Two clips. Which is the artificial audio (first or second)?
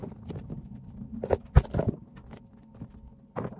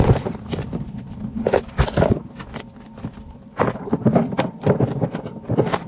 second